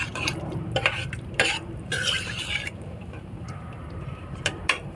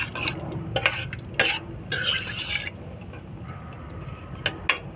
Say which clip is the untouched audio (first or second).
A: second